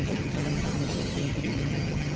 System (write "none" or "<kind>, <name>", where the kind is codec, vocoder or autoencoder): vocoder, HiFi-GAN